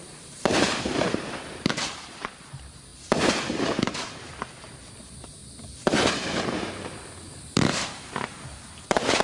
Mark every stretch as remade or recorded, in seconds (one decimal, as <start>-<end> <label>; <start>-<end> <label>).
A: 0.0-2.9 remade; 2.9-3.5 recorded; 3.5-5.4 remade; 5.4-6.1 recorded; 6.1-9.2 remade